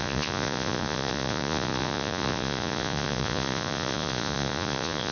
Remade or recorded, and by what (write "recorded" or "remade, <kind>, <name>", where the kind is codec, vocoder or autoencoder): remade, vocoder, Vocos